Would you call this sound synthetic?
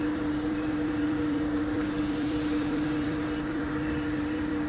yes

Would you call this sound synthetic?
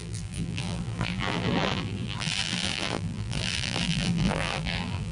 yes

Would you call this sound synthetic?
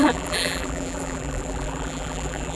yes